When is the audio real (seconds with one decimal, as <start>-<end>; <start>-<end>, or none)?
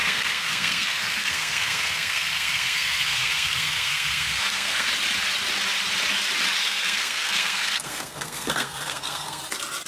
4.9-6.6; 9.4-9.9